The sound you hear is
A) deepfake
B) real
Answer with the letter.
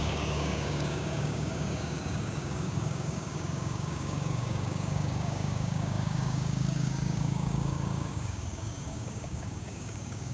A